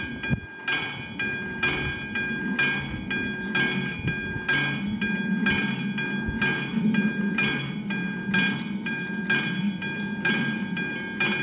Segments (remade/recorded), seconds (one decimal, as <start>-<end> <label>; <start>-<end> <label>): 0.0-11.4 recorded